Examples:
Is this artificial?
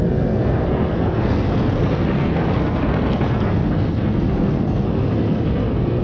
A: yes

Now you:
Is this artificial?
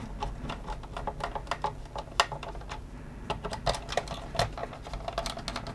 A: no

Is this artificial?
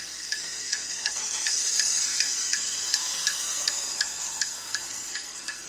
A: yes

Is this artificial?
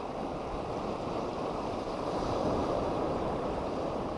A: no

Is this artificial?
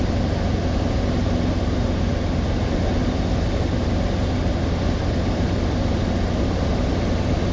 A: no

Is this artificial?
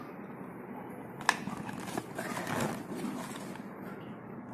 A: no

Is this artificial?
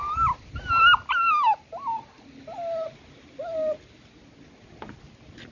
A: no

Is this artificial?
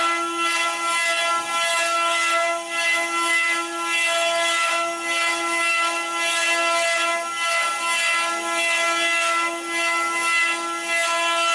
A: no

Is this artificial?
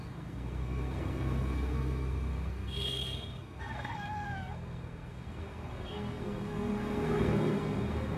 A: yes